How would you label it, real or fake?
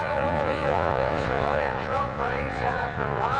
fake